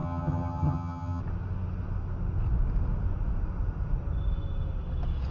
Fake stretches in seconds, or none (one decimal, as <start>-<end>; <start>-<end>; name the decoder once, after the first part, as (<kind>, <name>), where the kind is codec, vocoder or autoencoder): 0.0-1.2 (vocoder, HiFi-GAN)